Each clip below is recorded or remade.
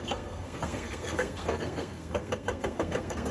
remade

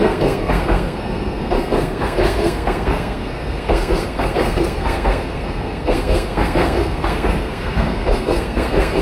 remade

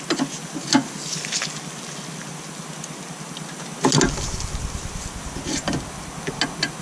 recorded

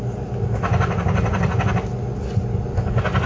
recorded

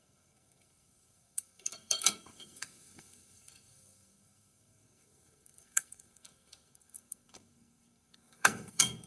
remade